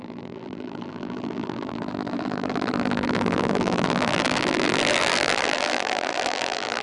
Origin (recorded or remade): remade